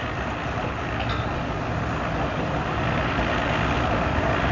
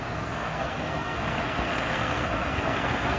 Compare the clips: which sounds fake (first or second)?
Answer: second